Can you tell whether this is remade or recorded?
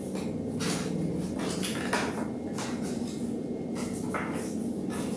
recorded